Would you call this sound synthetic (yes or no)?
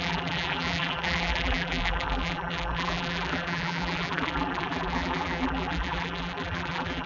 yes